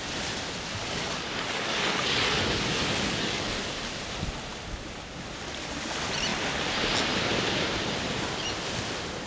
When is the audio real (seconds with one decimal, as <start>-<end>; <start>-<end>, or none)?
0.0-0.8; 3.6-9.3